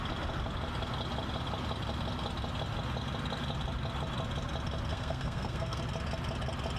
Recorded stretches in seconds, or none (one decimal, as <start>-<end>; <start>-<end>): 0.0-4.9; 5.8-6.8